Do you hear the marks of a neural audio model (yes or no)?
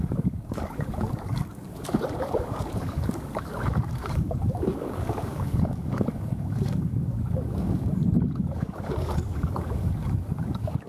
yes